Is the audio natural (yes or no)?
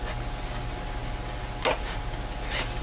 yes